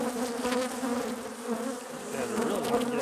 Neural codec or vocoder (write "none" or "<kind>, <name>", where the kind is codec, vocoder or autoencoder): none